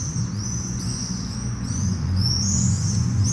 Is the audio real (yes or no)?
no